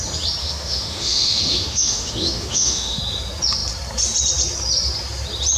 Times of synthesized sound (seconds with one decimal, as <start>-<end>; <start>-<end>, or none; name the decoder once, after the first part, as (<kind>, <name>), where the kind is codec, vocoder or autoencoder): 0.4-3.0 (autoencoder, DAC-VAE)